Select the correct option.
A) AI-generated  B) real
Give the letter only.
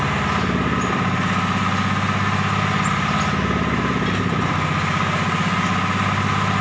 B